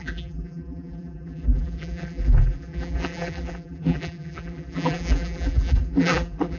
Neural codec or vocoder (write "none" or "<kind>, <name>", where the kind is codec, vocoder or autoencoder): vocoder, BigVGAN v2